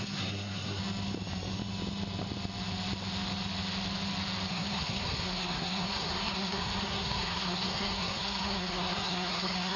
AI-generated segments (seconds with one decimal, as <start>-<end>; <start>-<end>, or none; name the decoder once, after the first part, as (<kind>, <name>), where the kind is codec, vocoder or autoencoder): 0.0-0.8 (codec, SNAC); 4.5-9.8